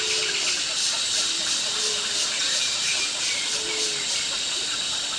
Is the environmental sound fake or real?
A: real